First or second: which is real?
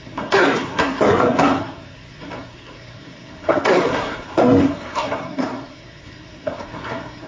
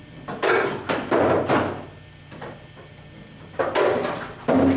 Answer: second